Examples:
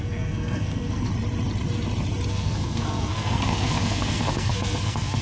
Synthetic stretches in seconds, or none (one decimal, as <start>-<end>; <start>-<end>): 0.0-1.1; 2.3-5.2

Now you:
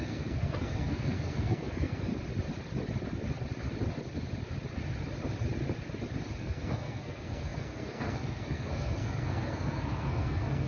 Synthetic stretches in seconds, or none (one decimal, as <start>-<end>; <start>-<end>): 0.0-2.1; 6.4-10.7

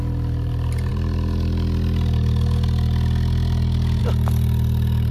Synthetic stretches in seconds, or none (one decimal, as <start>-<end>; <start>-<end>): none

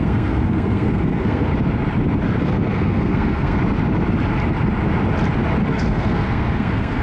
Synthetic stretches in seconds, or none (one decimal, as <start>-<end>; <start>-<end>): 0.0-1.5; 2.4-3.6; 5.7-7.0